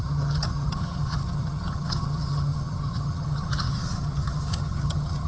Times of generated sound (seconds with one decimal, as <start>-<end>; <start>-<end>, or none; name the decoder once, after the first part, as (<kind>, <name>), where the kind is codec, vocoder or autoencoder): 0.0-5.3 (vocoder, HiFi-GAN)